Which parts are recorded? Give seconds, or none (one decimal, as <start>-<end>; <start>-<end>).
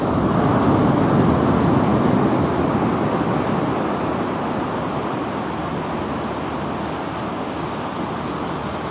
0.0-7.3; 7.9-8.9